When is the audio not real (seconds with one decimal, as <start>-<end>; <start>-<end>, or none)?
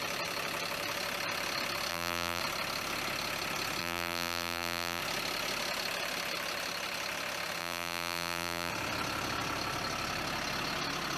1.9-2.4; 3.8-5.0; 7.6-8.7